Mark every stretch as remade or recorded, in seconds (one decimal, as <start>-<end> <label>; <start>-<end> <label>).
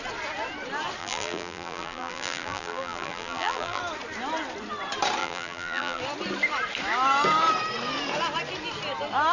0.0-1.0 recorded; 1.0-3.8 remade; 3.8-5.2 recorded; 5.2-6.0 remade; 6.0-9.3 recorded